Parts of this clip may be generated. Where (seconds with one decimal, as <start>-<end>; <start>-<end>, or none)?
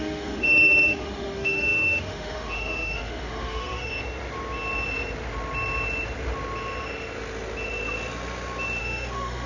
0.0-3.9; 8.8-9.5